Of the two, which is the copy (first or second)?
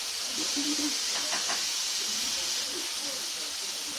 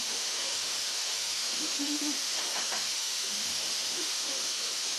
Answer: second